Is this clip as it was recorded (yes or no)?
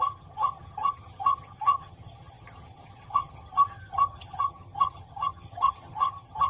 no